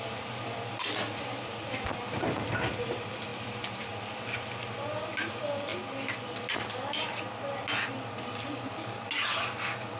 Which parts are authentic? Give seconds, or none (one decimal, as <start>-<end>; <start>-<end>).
0.0-10.0